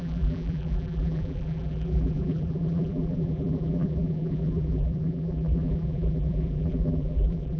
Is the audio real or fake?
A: fake